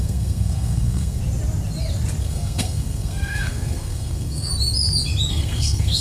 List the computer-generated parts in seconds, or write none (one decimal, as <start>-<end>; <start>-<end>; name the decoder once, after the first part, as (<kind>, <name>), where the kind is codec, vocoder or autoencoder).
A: 0.0-1.2 (codec, SNAC); 2.2-4.5; 5.3-6.0